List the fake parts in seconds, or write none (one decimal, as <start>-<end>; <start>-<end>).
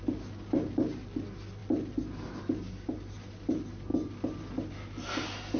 none